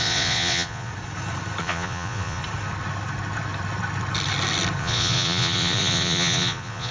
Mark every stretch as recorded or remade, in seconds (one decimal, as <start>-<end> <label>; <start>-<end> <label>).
0.0-0.9 remade; 0.9-1.6 recorded; 1.6-2.4 remade; 2.4-4.8 recorded; 4.8-6.9 remade